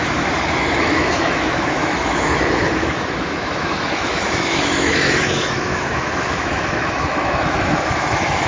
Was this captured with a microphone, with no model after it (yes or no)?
no